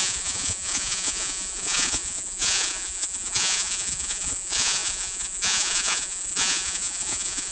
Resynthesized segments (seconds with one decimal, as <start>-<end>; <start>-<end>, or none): 0.0-7.5